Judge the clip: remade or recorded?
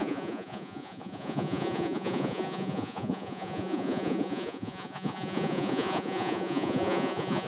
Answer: remade